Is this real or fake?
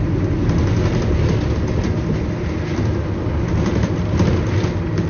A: real